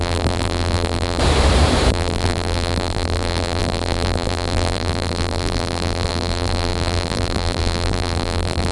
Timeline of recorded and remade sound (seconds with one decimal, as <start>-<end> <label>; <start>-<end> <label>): 0.0-1.2 remade; 1.2-1.9 recorded; 1.9-8.7 remade